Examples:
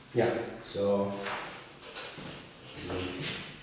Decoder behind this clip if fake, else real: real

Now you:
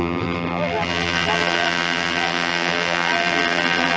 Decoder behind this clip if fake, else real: fake, vocoder, BigVGAN v2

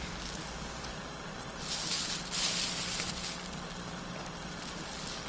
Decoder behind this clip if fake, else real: real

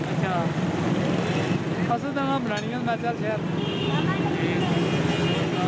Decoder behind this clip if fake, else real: real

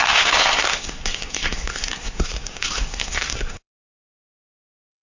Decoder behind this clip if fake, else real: fake, codec, SNAC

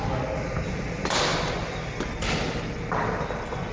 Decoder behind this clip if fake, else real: real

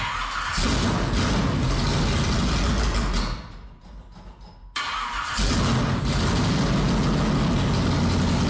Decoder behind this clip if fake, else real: real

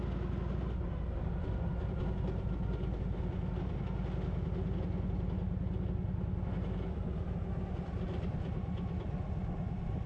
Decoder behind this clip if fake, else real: real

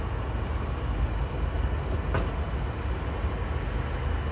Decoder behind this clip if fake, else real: real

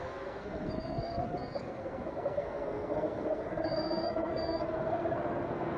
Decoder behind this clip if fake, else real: fake, codec, SNAC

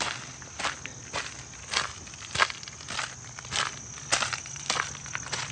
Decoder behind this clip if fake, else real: real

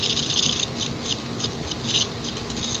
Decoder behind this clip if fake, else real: real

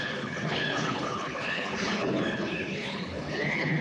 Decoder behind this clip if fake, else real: fake, codec, HILCodec